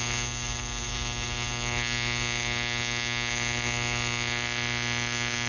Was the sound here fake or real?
real